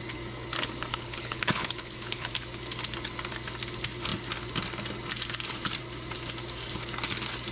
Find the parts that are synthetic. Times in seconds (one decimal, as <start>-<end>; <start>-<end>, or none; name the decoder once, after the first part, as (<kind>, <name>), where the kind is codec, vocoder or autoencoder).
0.9-2.3 (codec, HILCodec)